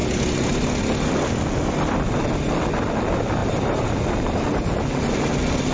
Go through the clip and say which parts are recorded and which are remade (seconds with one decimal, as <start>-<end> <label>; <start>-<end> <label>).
0.0-3.4 recorded; 3.4-5.1 remade; 5.1-5.7 recorded